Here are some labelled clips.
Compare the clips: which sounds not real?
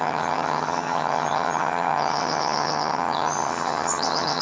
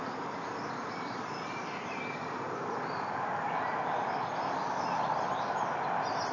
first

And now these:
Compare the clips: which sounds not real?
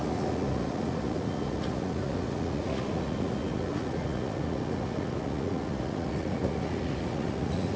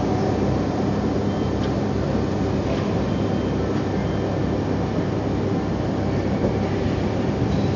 first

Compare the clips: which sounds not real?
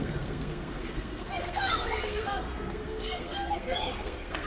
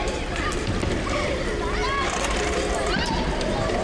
first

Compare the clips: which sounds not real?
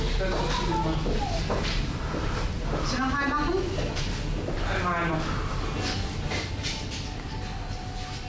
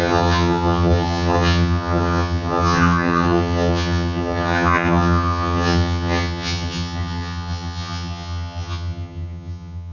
second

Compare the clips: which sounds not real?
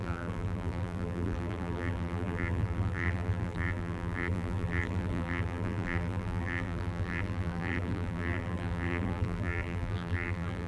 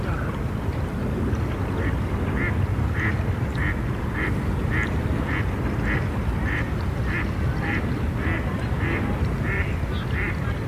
first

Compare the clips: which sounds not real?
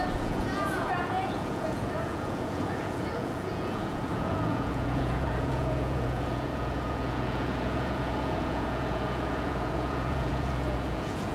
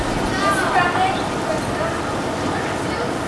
first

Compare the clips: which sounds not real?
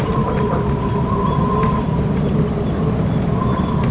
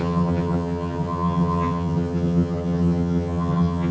second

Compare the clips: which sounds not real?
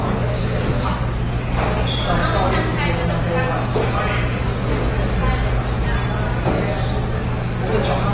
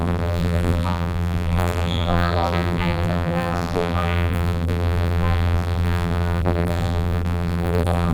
second